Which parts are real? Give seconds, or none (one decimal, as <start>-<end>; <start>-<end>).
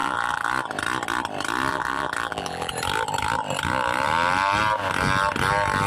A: 0.5-1.7; 2.7-5.9